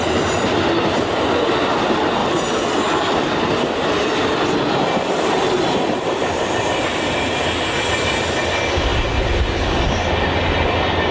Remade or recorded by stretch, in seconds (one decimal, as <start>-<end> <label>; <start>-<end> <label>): 0.0-11.1 recorded